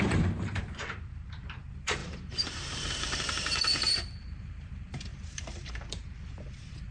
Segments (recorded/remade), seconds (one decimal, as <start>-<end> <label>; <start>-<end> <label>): 0.0-6.9 remade